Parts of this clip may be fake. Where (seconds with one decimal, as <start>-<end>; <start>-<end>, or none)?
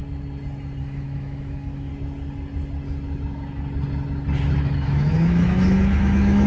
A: 0.8-1.9; 4.6-6.5